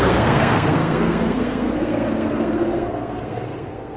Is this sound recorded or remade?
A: remade